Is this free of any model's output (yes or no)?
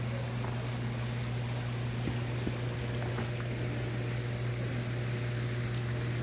yes